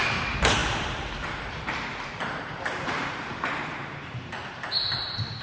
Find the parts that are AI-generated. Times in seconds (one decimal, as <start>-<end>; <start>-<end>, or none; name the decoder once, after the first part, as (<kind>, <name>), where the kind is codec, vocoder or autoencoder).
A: 0.0-5.4 (vocoder, BigVGAN v2)